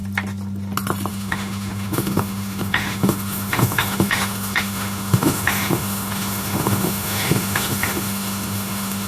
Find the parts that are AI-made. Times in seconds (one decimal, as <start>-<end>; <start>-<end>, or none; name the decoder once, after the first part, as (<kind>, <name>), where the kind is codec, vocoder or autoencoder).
1.1-9.1 (autoencoder, DAC-VAE)